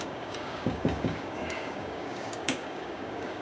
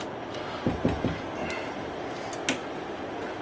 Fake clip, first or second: first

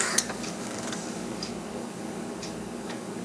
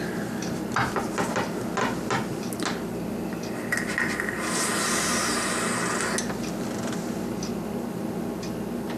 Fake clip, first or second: first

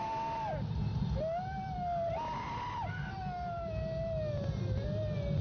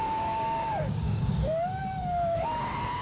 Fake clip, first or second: second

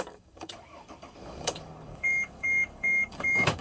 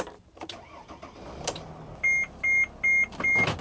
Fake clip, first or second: first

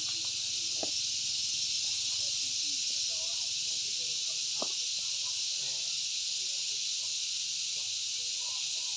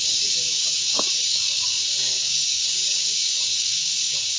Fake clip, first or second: second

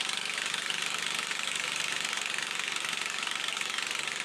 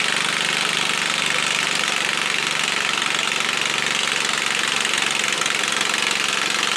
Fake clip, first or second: first